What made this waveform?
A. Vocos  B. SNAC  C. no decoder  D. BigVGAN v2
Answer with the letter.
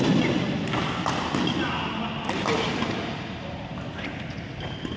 C